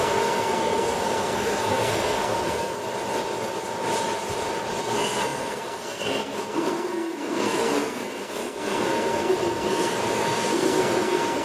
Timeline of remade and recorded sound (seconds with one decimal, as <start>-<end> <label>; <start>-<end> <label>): 0.0-2.8 remade; 2.8-4.8 recorded; 4.8-11.4 remade